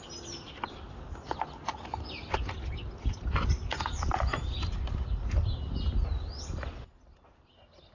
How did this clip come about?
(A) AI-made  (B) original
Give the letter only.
B